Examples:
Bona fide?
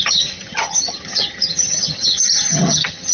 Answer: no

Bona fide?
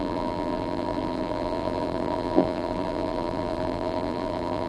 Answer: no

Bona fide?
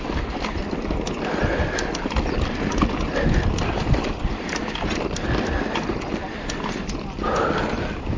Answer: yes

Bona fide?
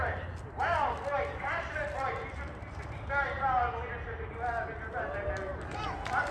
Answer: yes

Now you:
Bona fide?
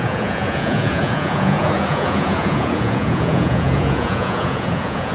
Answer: no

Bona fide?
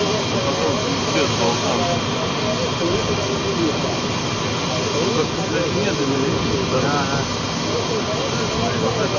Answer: yes